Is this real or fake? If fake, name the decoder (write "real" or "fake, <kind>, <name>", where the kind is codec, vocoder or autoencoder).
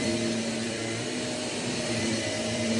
fake, vocoder, BigVGAN v2